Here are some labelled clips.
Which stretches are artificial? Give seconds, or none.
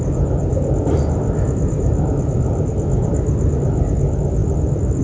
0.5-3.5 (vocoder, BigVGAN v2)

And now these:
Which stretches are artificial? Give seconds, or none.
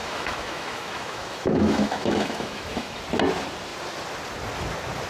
0.0-3.0 (autoencoder, DAC-VAE)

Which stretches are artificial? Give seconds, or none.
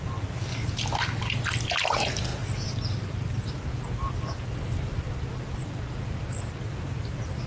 none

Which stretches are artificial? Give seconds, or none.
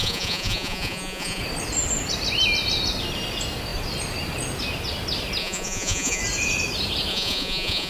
0.0-1.4 (vocoder, Vocos); 5.4-6.2; 7.1-7.9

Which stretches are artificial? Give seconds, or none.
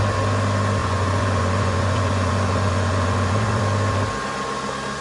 0.8-3.6 (vocoder, Vocos)